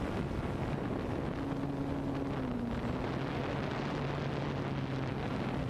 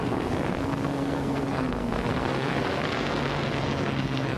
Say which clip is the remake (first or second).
second